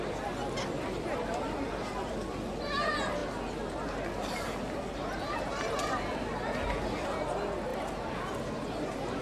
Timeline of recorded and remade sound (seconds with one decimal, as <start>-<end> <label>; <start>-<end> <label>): 0.0-9.2 recorded